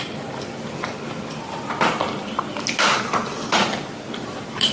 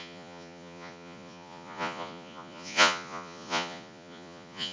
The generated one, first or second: second